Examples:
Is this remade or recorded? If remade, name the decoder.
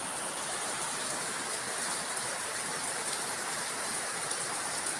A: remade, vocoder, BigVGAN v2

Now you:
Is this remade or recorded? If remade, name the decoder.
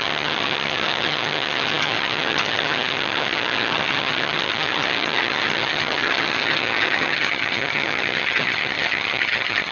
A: remade, vocoder, HiFi-GAN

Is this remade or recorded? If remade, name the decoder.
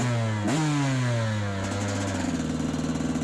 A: recorded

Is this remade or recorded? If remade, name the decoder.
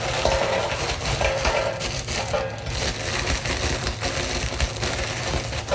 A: recorded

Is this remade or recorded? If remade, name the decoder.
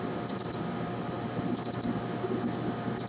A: recorded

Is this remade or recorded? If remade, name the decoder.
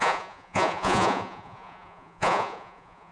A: remade, vocoder, Vocos